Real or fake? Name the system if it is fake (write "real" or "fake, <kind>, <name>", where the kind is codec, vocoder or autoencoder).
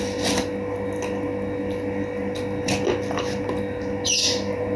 real